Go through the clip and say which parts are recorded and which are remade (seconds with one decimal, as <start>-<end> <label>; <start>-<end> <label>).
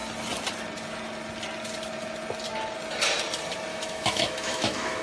0.0-3.7 recorded; 3.7-5.0 remade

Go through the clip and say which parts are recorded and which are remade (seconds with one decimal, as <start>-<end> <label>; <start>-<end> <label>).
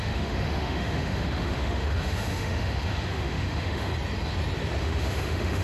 0.0-3.9 remade; 3.9-4.8 recorded; 4.8-5.6 remade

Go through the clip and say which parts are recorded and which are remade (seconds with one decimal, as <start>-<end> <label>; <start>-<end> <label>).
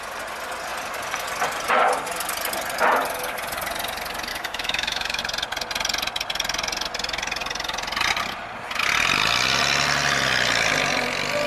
0.0-4.3 recorded; 4.3-5.2 remade; 5.2-11.5 recorded